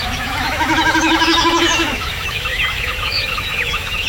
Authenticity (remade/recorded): remade